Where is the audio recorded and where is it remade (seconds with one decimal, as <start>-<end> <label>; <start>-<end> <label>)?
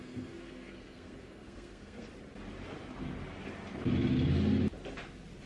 0.0-2.1 remade; 2.1-5.5 recorded